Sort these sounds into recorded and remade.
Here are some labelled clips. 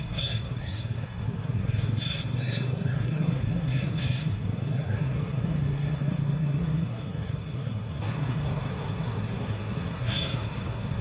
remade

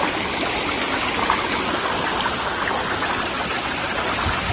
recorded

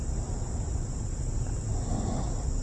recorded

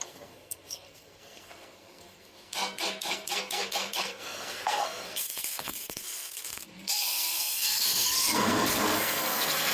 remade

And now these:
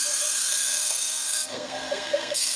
remade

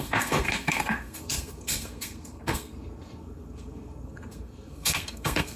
remade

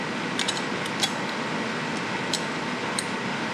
recorded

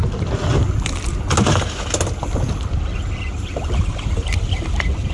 recorded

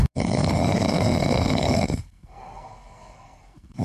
remade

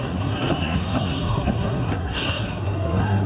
remade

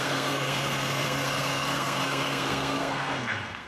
remade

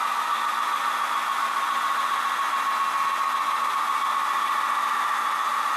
recorded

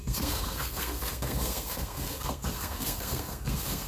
remade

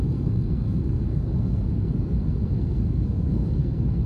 remade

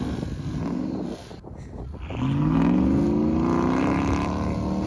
recorded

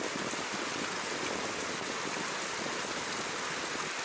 recorded